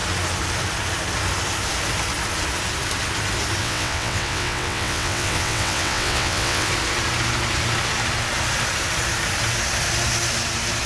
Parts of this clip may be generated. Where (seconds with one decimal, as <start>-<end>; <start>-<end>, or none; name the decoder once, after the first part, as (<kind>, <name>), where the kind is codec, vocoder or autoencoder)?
3.6-6.7 (vocoder, WaveNeXt)